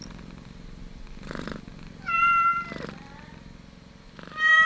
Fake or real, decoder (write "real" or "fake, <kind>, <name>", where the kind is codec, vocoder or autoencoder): real